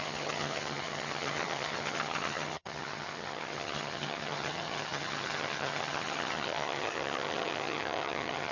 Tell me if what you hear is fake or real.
fake